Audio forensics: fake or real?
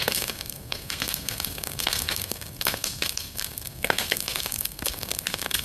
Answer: fake